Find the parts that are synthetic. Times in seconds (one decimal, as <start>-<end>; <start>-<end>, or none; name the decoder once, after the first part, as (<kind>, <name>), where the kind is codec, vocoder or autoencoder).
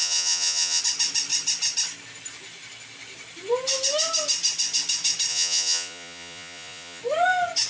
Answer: 0.0-0.8 (vocoder, Vocos); 5.3-7.0